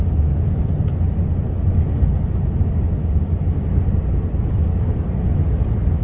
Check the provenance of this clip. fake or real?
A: real